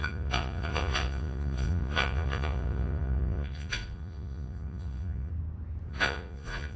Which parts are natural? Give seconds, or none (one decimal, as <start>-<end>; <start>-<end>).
5.3-5.9